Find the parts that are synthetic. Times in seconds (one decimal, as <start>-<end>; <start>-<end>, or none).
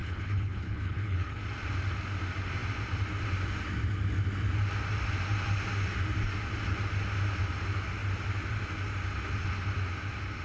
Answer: 0.0-1.4